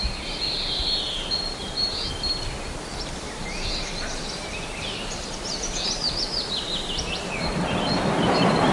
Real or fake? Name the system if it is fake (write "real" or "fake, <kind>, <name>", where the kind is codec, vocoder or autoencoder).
fake, vocoder, BigVGAN v2